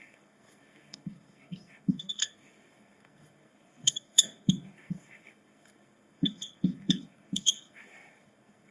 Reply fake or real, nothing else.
fake